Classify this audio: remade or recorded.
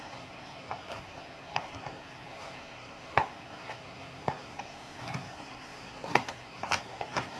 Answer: remade